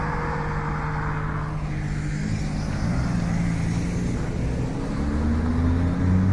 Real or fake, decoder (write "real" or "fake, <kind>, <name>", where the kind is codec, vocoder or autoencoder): real